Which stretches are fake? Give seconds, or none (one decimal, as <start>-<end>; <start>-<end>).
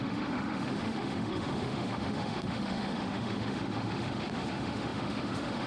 0.0-5.7